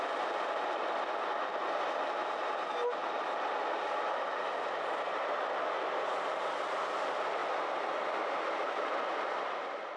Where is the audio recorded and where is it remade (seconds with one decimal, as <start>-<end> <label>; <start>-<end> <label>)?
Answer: 0.0-10.0 recorded